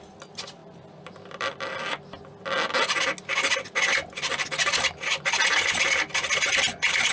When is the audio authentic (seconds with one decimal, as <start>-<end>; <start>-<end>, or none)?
0.0-0.6; 1.8-6.2

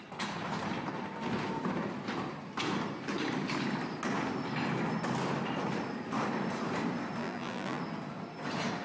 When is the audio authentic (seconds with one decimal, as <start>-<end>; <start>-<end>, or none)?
0.0-7.2; 7.8-8.8

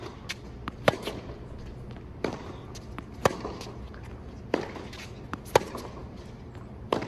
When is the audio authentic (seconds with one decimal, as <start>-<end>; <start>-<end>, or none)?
0.0-7.1

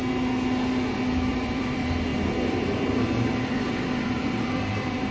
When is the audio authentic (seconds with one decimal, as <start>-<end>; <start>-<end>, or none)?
0.0-1.1

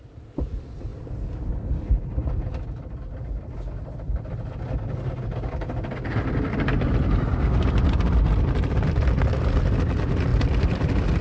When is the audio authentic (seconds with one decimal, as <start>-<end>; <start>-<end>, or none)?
none

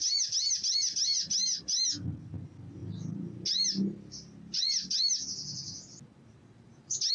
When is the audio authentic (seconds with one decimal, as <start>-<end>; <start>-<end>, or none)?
0.0-7.1

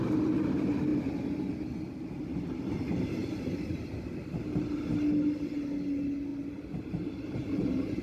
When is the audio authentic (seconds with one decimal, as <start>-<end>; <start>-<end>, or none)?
0.0-0.9; 1.8-3.2; 4.8-6.3; 6.9-8.0

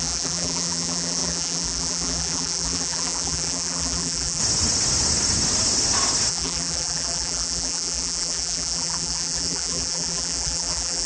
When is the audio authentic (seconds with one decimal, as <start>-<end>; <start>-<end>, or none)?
4.4-6.3